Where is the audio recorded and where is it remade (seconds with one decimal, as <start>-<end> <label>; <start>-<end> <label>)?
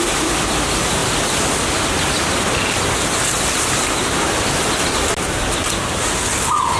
0.0-6.8 recorded